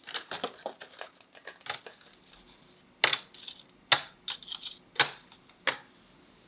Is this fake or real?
real